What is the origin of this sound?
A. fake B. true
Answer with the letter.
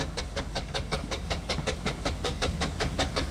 A